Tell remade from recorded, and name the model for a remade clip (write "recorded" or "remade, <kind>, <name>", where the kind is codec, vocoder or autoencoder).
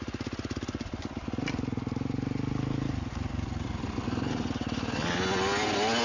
recorded